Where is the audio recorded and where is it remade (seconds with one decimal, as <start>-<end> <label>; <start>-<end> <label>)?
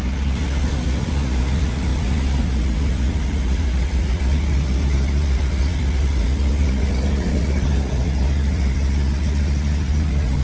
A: 0.0-10.4 remade